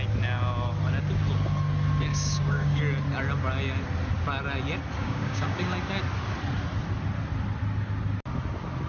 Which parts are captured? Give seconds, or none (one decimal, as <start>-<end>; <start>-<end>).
0.0-2.1; 2.8-5.0; 5.6-8.9